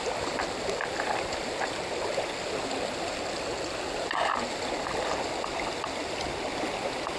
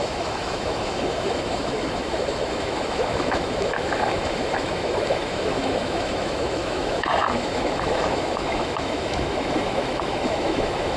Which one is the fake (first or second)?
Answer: second